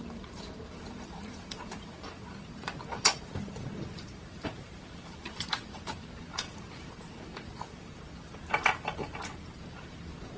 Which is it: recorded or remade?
remade